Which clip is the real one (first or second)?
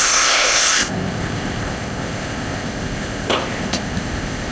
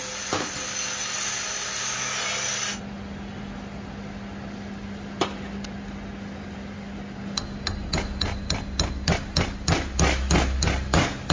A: second